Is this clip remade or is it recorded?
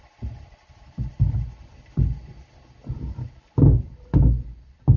recorded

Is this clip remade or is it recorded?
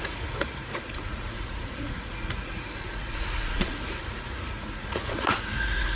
remade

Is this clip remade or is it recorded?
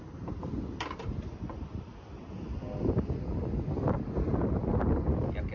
recorded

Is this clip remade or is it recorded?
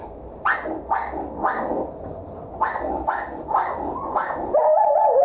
recorded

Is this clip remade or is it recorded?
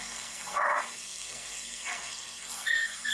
remade